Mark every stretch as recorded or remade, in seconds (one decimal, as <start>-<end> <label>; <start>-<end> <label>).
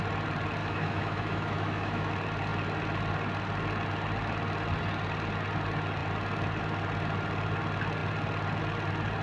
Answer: 0.0-0.6 recorded; 0.6-2.1 remade; 2.1-9.2 recorded